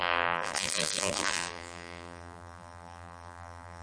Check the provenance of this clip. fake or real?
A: fake